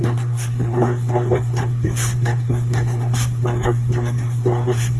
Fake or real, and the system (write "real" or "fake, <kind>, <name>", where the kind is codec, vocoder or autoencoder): fake, codec, SNAC